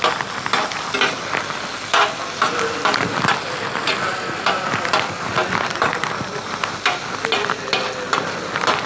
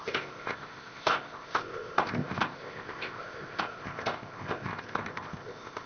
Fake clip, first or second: second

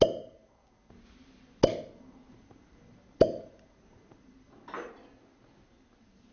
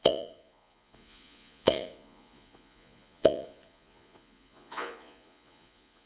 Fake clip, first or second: second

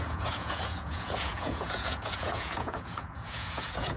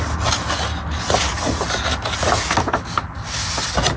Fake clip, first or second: first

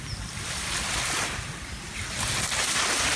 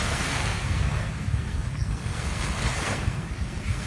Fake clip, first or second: second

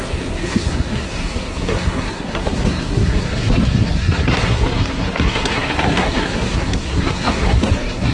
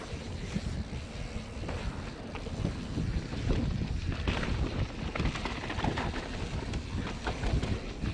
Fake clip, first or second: first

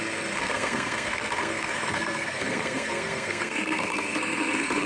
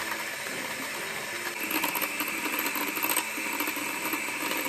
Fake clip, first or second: first